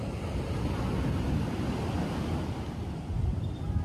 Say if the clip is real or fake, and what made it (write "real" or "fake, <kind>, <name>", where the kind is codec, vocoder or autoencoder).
real